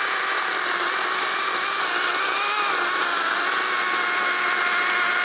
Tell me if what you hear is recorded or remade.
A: recorded